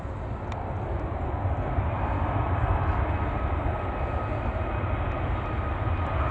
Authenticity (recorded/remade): recorded